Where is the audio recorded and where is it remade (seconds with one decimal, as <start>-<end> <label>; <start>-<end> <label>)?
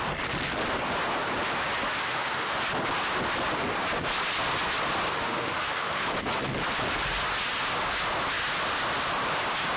0.0-1.9 recorded; 1.9-2.6 remade; 2.6-5.1 recorded; 5.1-6.0 remade; 6.0-9.8 recorded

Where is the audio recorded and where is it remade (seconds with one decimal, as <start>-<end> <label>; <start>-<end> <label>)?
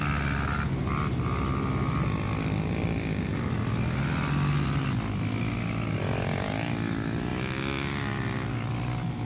0.0-9.2 recorded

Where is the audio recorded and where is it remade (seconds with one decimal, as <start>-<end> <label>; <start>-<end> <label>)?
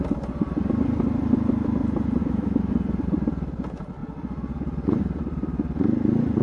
0.0-2.2 recorded; 2.2-2.7 remade; 2.7-6.4 recorded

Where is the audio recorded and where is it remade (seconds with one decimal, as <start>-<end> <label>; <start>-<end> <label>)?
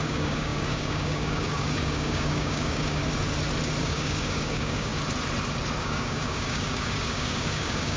0.0-3.0 remade; 3.0-3.8 recorded; 3.8-4.9 remade; 4.9-5.8 recorded; 5.8-8.0 remade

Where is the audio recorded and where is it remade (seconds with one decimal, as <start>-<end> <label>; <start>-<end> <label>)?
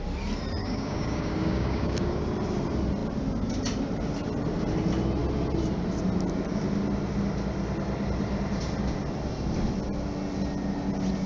0.0-0.6 recorded; 0.6-2.2 remade; 2.2-11.3 recorded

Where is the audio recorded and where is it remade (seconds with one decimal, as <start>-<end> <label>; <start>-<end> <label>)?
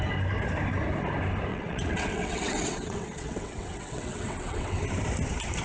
0.0-1.5 recorded; 1.5-4.8 remade; 4.8-5.6 recorded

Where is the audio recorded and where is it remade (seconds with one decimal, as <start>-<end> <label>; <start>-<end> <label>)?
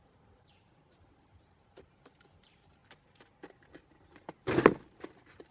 0.0-2.8 remade; 2.8-5.0 recorded; 5.0-5.5 remade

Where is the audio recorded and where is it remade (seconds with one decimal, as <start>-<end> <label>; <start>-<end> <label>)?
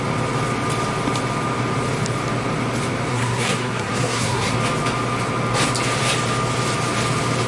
0.0-3.1 recorded; 3.1-4.5 remade; 4.5-7.5 recorded